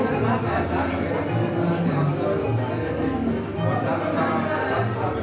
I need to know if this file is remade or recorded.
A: recorded